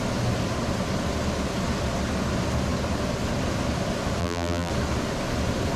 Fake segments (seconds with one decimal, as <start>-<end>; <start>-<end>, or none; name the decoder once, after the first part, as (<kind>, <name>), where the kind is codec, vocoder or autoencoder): 4.2-4.7 (vocoder, BigVGAN v2)

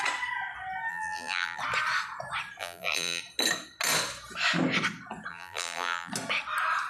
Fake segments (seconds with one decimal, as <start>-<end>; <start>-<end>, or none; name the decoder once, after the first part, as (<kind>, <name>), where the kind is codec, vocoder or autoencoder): 0.9-1.6 (vocoder, BigVGAN v2); 2.6-3.2; 5.3-6.1

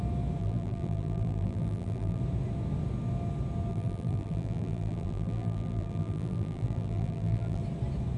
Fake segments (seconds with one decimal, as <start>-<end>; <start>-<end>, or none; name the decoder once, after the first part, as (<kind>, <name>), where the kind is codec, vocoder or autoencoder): 0.4-2.2 (vocoder, BigVGAN v2); 3.7-7.6

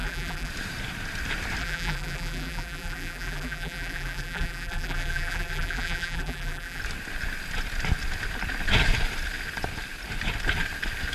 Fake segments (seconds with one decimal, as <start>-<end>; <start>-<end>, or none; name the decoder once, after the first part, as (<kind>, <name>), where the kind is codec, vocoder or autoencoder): 0.0-0.5 (vocoder, BigVGAN v2); 1.6-6.8

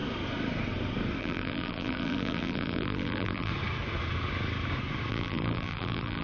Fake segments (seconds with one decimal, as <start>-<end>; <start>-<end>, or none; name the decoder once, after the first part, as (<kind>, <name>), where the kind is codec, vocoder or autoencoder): 1.2-3.5 (vocoder, BigVGAN v2); 5.1-6.2